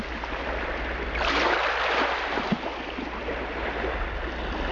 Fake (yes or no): no